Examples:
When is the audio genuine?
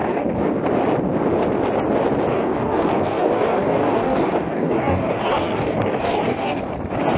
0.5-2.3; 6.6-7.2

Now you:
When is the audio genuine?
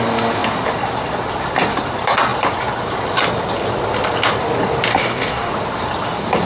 0.0-4.9; 5.5-6.4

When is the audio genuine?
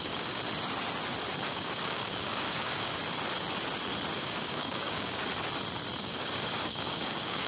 0.4-1.5; 3.0-4.2; 5.3-6.0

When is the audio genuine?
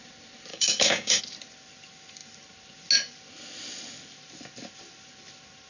0.0-0.5; 1.2-5.7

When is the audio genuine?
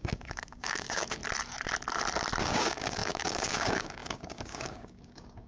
1.2-2.4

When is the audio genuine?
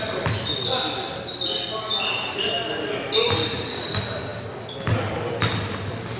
0.0-6.2